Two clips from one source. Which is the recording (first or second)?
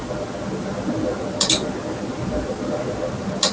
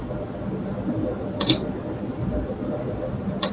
first